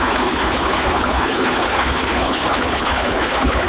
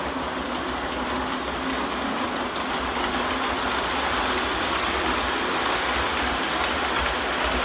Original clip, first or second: second